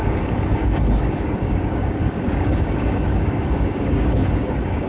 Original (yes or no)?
no